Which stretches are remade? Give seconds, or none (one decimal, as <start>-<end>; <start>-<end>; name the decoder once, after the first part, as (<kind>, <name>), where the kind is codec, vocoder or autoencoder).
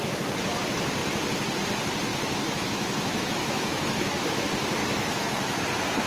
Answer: 2.1-4.2 (autoencoder, DAC-VAE); 4.8-5.6